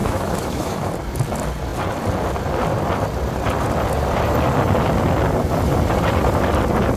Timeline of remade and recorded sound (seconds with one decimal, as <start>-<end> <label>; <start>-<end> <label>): 0.0-0.9 remade; 0.9-7.0 recorded